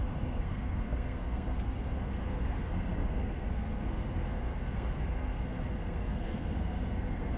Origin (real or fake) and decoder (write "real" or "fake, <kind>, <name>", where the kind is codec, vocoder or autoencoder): fake, codec, SNAC